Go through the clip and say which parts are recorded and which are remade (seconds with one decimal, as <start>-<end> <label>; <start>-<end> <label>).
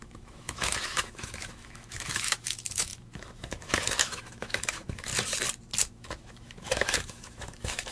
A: 0.0-5.1 remade; 5.1-5.9 recorded; 5.9-7.9 remade